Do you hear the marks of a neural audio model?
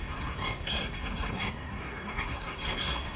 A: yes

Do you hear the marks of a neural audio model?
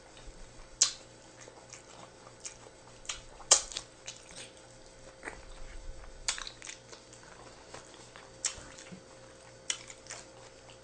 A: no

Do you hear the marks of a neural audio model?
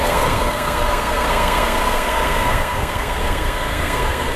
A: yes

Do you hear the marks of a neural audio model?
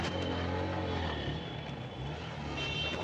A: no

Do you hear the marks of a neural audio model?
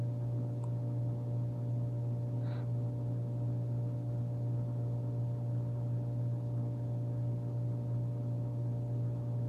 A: no